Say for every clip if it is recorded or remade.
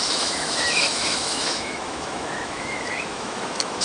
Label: remade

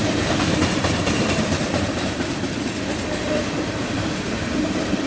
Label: remade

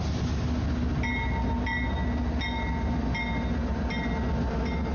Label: recorded